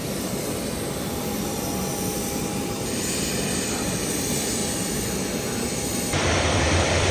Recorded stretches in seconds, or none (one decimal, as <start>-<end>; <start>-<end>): 0.0-2.2; 4.6-6.4